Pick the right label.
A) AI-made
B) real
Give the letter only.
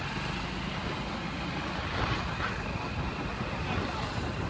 B